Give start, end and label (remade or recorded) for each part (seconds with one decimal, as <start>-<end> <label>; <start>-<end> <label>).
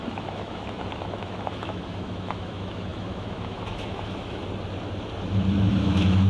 0.0-4.4 remade; 4.4-5.7 recorded; 5.7-6.3 remade